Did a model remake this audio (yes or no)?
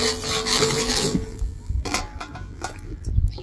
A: yes